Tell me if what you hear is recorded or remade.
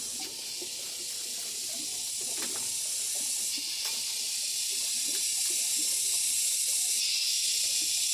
recorded